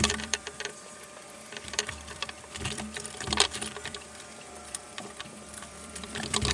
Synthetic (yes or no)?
yes